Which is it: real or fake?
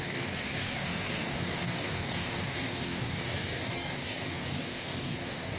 fake